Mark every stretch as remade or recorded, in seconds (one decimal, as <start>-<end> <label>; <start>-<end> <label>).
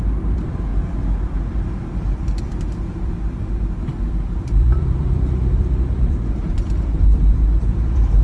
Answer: 0.0-0.7 remade; 0.7-3.0 recorded; 3.0-8.2 remade